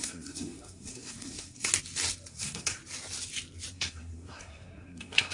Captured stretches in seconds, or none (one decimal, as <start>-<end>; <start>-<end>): 1.7-2.3; 2.8-3.7